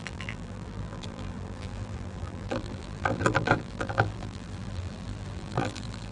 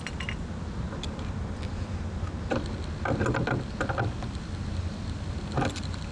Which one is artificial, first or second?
first